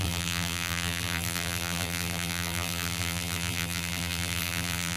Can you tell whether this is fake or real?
fake